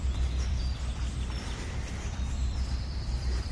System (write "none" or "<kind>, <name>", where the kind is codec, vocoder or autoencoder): vocoder, BigVGAN v2